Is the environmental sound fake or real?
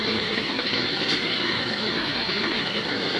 fake